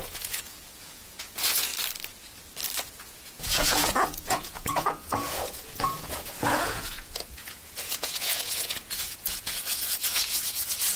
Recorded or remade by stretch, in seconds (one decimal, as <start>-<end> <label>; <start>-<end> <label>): 0.0-1.7 remade; 1.7-2.8 recorded; 2.8-11.0 remade

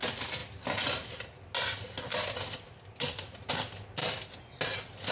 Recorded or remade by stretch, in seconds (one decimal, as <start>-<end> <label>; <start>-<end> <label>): 0.0-5.1 recorded

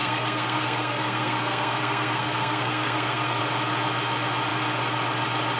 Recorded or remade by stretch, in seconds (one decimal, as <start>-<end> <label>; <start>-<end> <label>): 0.0-3.4 remade; 3.4-5.6 recorded

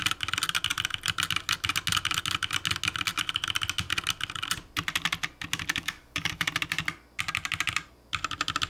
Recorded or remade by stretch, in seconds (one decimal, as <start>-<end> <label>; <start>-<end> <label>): 0.0-5.8 recorded; 5.8-6.5 remade; 6.5-8.7 recorded

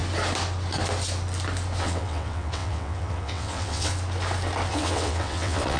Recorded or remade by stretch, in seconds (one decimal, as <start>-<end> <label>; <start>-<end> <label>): 0.0-1.8 recorded; 1.8-3.9 remade; 3.9-4.7 recorded; 4.7-5.8 remade

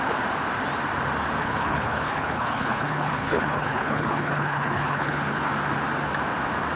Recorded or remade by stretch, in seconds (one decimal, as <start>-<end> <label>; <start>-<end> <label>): 0.0-1.4 recorded; 1.4-5.5 remade; 5.5-6.8 recorded